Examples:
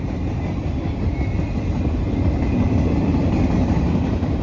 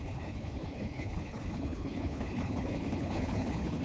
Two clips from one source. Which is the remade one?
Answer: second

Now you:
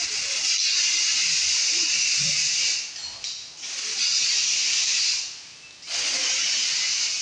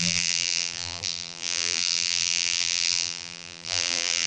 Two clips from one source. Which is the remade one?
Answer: second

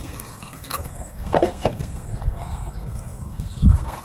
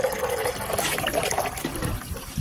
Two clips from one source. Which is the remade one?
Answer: first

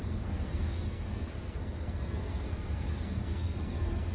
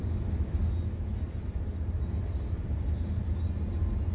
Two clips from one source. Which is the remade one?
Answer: first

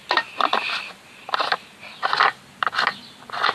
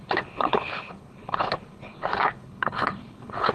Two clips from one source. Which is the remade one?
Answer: second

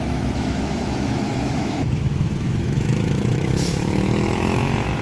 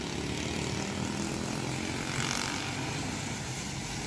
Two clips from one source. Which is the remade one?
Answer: first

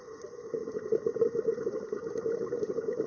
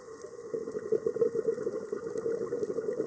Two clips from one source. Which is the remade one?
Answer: first